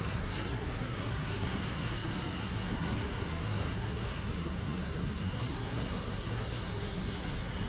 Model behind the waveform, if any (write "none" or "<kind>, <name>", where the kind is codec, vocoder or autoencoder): codec, SNAC